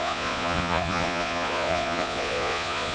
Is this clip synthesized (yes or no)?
yes